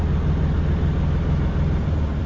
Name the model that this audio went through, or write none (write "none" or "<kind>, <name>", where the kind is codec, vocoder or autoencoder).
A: none